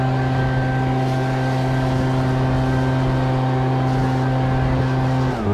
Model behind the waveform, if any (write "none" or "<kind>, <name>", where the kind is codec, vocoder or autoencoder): none